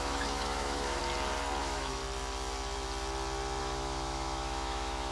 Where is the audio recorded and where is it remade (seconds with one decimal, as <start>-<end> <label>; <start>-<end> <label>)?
0.0-1.0 remade; 1.0-1.6 recorded; 1.6-2.0 remade; 2.0-3.6 recorded; 3.6-5.1 remade